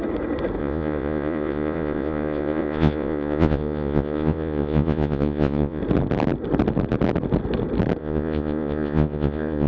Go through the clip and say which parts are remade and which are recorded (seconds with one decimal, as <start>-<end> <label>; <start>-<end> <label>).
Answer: 0.0-0.6 recorded; 0.6-5.8 remade; 5.8-8.0 recorded; 8.0-9.7 remade